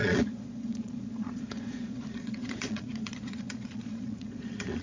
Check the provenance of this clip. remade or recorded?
remade